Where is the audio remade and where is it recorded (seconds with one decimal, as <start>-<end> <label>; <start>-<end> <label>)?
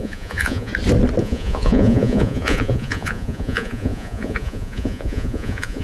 0.0-0.7 remade; 0.7-1.2 recorded; 1.2-5.8 remade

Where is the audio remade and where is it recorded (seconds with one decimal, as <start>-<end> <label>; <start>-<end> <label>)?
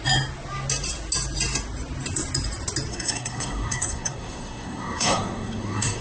0.0-2.9 recorded; 2.9-6.0 remade